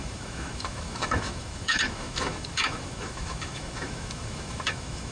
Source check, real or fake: fake